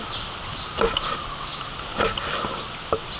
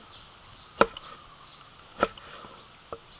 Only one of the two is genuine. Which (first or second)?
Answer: second